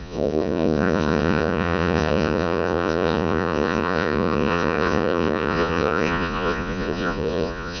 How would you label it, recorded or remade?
remade